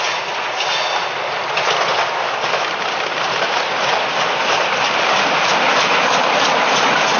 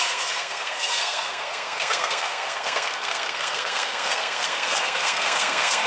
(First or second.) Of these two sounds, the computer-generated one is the second